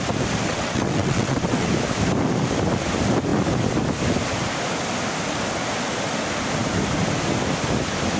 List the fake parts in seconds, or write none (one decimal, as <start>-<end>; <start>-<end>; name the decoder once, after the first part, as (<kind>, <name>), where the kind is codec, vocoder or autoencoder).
0.5-1.7 (vocoder, WaveNeXt)